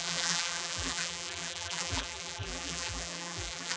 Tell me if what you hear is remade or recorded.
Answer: remade